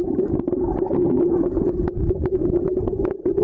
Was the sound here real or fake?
fake